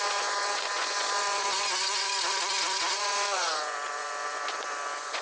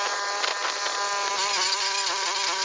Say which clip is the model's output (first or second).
first